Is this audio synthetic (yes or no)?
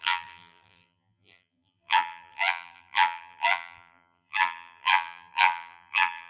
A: yes